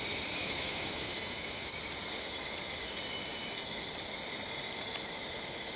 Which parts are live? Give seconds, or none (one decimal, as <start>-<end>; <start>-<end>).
0.0-0.4; 1.7-5.8